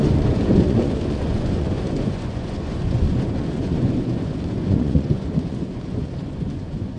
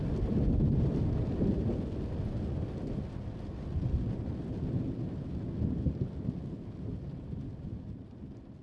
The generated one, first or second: first